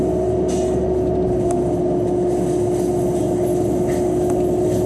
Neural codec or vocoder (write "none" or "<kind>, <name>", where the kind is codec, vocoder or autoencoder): none